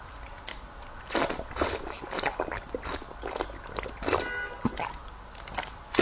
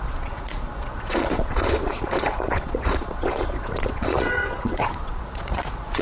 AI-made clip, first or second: second